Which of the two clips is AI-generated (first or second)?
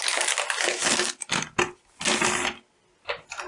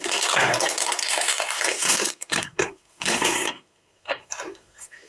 second